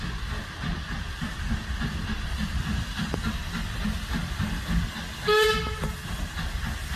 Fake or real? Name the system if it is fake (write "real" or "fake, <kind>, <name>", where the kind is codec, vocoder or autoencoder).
real